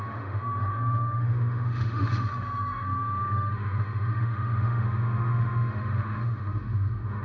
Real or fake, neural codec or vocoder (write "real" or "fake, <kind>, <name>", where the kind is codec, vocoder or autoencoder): fake, autoencoder, DAC-VAE